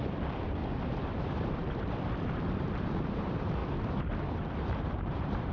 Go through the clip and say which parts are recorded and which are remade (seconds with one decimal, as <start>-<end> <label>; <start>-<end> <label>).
0.0-0.6 remade; 0.6-1.1 recorded; 1.1-3.6 remade; 3.6-4.4 recorded; 4.4-5.5 remade